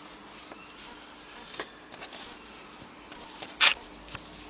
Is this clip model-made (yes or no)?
no